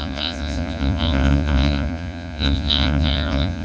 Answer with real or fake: fake